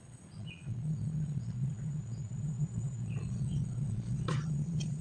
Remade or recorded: remade